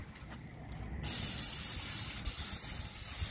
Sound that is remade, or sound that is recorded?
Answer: recorded